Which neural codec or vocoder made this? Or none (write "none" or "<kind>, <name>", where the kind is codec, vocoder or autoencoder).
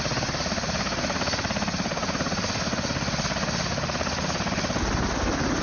none